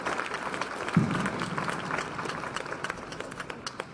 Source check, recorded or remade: recorded